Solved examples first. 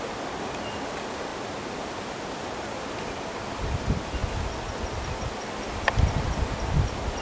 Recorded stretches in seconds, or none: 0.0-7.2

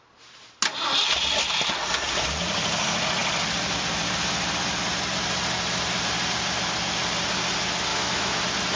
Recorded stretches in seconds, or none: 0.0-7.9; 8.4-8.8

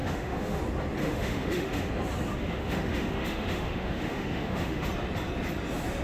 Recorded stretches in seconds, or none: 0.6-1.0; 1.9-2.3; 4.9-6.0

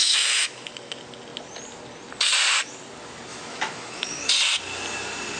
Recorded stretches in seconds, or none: 0.7-3.3; 4.3-5.4

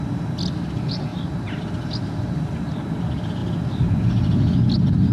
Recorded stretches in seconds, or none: 0.0-5.1